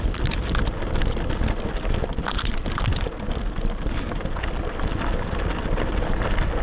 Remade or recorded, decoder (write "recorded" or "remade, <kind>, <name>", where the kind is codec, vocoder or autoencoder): recorded